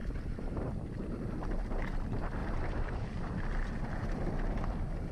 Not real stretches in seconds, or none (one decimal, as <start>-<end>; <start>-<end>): 0.0-0.7; 2.4-3.3